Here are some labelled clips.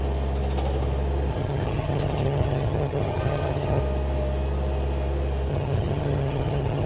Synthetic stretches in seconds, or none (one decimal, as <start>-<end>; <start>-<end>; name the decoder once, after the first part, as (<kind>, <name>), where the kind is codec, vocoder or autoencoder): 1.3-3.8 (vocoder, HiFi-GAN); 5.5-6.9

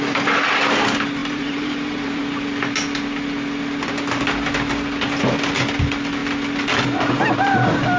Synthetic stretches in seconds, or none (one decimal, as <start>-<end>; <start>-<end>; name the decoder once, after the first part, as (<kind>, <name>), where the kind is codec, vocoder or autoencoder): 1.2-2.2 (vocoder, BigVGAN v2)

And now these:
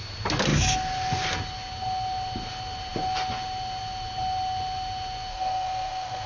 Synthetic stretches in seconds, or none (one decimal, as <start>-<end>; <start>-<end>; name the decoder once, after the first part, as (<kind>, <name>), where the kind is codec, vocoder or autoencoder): 5.3-6.3 (codec, SNAC)

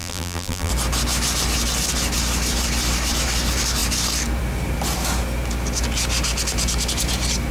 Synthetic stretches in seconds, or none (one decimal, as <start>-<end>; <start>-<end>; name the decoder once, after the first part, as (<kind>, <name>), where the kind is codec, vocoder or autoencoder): 0.0-0.7 (vocoder, BigVGAN v2)

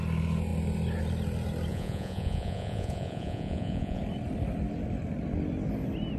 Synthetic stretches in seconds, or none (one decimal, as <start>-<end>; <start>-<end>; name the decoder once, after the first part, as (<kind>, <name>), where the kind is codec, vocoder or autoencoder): 1.7-4.0 (vocoder, Vocos)